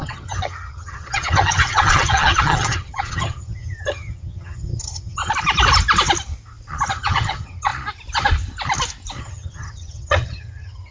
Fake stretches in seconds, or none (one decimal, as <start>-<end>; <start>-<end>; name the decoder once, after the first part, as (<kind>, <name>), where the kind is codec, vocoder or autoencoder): 0.0-5.2 (vocoder, HiFi-GAN); 6.9-7.7; 9.2-10.9